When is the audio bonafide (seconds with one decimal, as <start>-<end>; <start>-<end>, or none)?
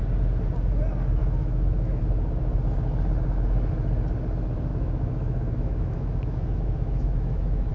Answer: 0.0-1.2; 2.0-4.7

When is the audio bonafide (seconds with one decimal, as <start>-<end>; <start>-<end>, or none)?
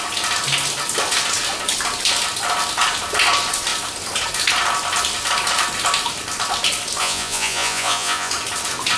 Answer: 0.0-7.0; 8.3-9.0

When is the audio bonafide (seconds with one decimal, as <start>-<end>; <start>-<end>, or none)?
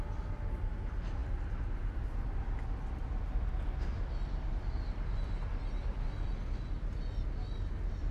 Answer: 0.0-8.1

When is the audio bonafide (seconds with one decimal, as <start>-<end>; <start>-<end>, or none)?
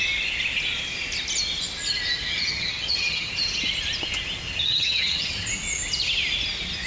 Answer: 0.0-2.3; 3.3-4.6; 5.3-6.9